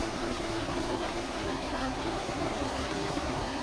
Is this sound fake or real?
fake